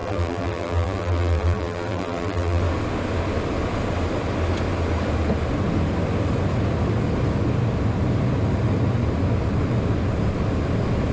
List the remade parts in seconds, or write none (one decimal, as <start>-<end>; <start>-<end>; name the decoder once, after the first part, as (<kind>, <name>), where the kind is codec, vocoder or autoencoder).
0.0-2.6 (vocoder, BigVGAN v2)